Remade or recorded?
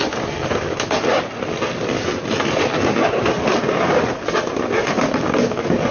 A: recorded